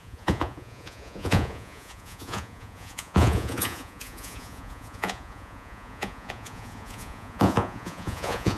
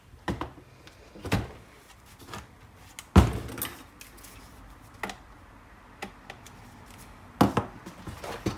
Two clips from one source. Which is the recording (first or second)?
second